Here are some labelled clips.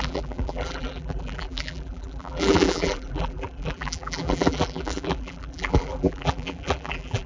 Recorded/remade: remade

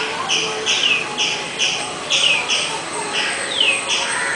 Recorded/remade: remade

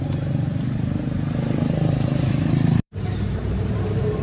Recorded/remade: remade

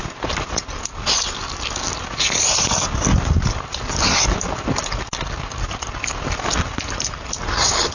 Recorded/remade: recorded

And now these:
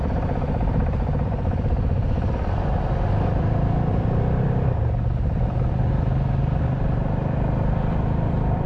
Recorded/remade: remade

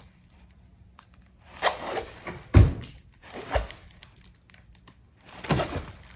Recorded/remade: remade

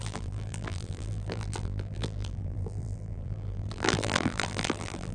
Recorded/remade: remade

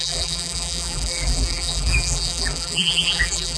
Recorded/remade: remade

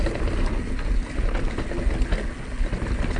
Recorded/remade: recorded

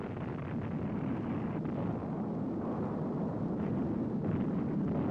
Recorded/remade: recorded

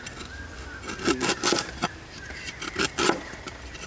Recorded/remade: recorded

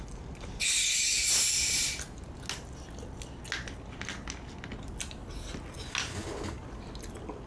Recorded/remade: recorded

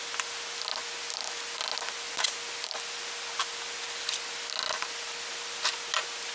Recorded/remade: recorded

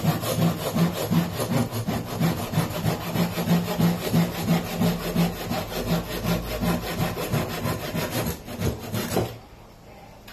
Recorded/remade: recorded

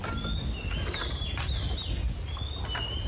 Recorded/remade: recorded